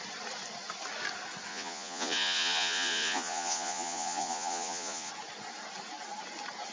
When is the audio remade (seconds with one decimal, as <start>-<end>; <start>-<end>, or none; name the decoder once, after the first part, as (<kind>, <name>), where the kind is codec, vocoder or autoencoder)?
1.5-5.1 (vocoder, Vocos)